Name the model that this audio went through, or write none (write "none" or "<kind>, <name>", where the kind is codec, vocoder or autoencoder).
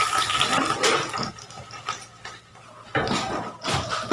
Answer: none